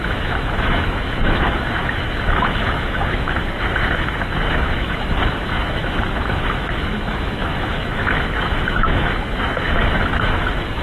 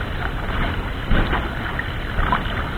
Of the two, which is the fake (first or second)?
first